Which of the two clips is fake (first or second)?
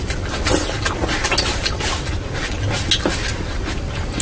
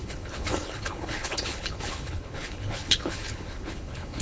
second